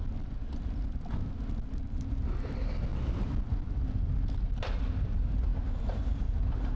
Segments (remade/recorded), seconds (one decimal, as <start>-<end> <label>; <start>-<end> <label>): 0.0-6.8 recorded